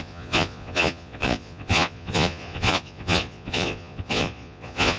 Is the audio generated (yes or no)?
yes